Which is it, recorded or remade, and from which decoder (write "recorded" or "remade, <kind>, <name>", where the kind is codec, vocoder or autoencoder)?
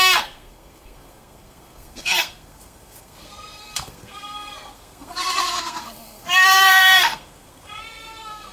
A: remade, codec, SNAC